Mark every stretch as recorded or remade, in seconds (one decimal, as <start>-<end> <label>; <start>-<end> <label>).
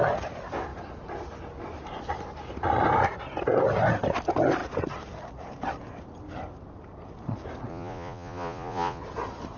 0.0-7.7 recorded; 7.7-9.0 remade; 9.0-9.6 recorded